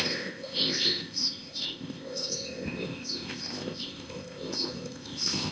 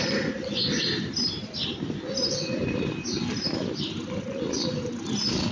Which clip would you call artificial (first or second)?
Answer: first